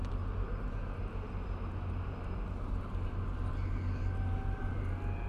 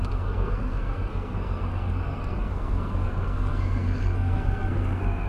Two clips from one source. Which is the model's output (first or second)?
second